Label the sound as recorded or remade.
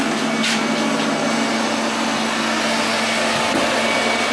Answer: recorded